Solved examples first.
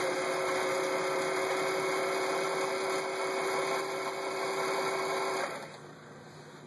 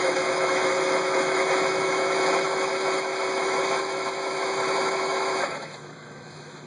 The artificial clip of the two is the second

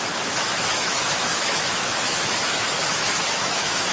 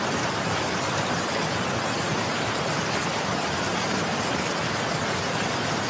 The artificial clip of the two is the first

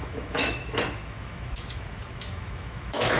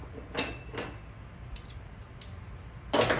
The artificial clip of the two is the first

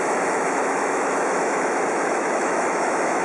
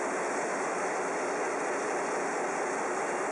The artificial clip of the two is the first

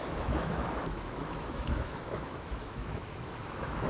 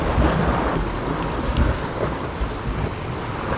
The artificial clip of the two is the first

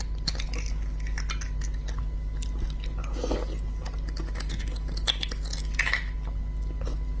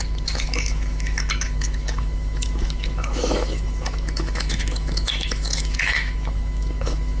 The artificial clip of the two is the second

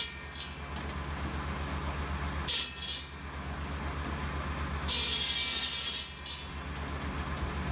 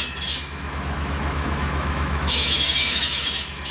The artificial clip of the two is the second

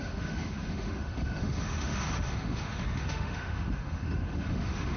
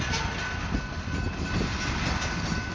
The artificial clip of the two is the first